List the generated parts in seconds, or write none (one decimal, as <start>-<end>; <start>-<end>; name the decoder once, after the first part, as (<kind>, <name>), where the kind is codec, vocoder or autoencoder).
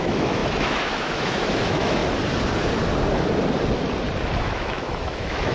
0.0-2.0 (autoencoder, DAC-VAE); 4.4-5.5